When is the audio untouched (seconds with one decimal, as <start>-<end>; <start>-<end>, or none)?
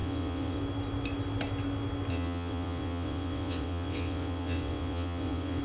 0.6-2.1